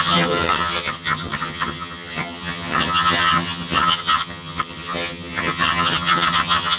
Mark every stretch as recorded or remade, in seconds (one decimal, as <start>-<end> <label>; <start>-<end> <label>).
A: 0.0-6.8 remade